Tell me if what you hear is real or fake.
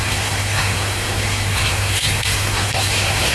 fake